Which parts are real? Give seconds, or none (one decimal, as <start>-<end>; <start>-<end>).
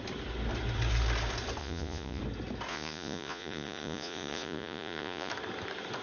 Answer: 0.0-1.6; 2.2-2.7; 5.3-6.0